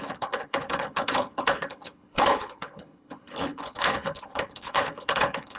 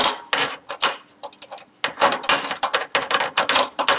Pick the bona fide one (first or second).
second